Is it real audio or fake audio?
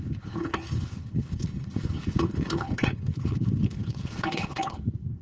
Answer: fake